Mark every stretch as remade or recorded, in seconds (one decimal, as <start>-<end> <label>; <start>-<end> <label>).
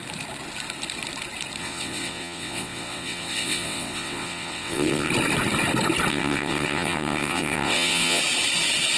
0.0-1.6 recorded; 1.6-5.1 remade; 5.1-6.1 recorded; 6.1-8.2 remade; 8.2-9.0 recorded